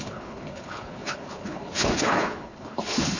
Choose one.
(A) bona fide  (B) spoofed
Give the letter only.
B